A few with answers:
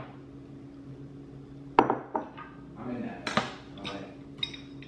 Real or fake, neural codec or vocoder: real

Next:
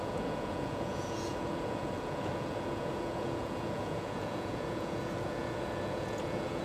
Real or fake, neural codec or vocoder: fake, vocoder, Vocos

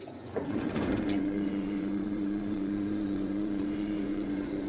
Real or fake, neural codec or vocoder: fake, vocoder, Vocos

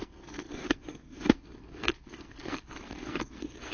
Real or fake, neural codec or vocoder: fake, codec, SNAC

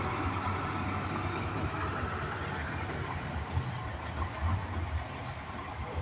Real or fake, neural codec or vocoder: real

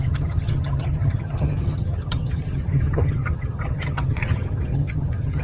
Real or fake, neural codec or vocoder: fake, vocoder, HiFi-GAN